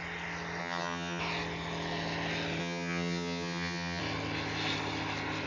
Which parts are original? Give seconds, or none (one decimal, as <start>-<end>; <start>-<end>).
0.0-0.6; 1.2-2.6; 4.0-5.5